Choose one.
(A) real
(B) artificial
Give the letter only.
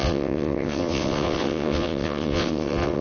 B